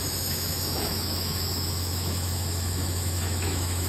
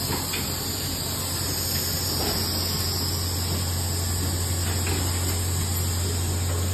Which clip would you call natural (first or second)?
second